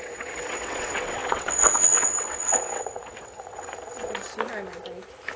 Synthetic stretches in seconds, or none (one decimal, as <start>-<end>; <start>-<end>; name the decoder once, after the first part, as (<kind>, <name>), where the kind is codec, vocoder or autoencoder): 0.0-4.3 (vocoder, WaveNeXt)